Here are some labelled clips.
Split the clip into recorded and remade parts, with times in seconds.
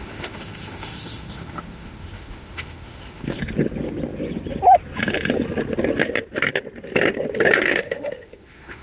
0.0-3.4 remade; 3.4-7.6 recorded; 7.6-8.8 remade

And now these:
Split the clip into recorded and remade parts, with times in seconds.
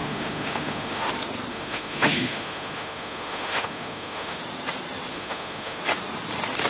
0.0-1.1 remade; 1.1-1.5 recorded; 1.5-4.4 remade; 4.4-5.1 recorded; 5.1-5.8 remade; 5.8-6.7 recorded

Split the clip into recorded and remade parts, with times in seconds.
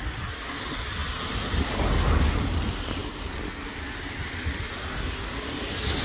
0.0-6.0 recorded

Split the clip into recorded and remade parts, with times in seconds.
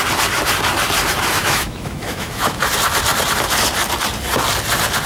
0.0-1.4 recorded; 1.4-2.6 remade; 2.6-5.1 recorded